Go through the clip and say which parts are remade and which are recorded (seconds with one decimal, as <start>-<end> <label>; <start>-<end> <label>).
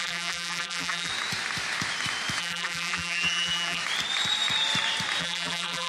0.0-1.1 remade; 1.1-2.4 recorded; 2.4-3.8 remade; 3.8-5.2 recorded; 5.2-5.9 remade